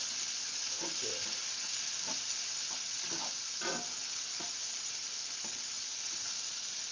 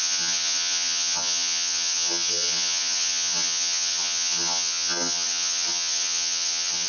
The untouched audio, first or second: first